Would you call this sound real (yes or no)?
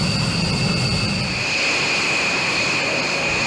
yes